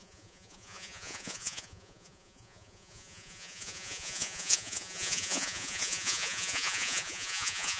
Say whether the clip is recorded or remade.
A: remade